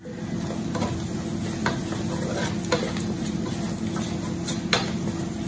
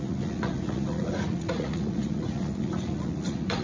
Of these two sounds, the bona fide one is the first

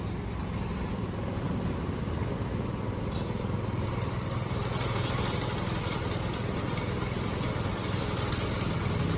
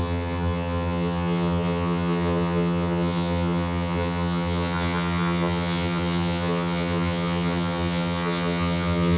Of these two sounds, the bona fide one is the first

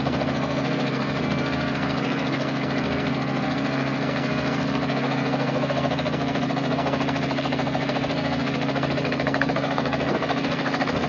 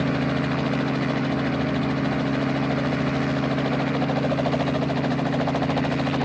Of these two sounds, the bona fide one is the second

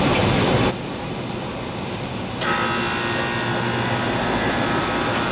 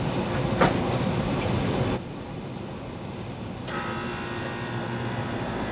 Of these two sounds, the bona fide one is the first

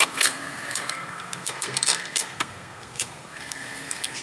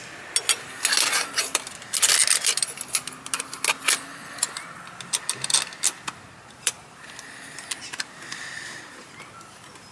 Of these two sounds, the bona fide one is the second